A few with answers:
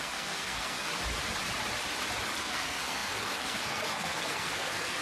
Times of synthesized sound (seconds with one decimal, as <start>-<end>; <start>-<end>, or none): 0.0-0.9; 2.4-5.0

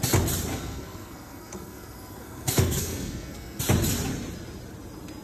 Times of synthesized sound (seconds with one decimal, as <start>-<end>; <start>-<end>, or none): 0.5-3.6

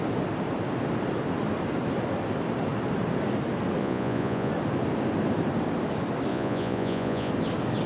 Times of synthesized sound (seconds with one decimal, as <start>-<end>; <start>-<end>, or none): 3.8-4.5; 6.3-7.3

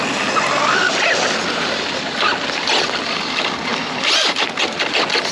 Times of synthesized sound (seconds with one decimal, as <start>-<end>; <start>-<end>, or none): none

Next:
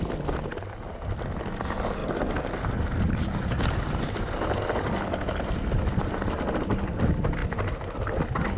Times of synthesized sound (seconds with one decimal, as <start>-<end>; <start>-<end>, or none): 7.4-8.1

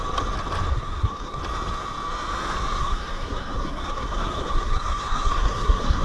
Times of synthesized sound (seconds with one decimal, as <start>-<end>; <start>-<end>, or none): 0.7-1.4; 2.8-6.0